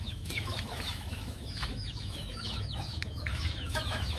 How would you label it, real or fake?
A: fake